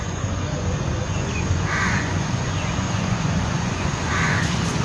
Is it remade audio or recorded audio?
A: remade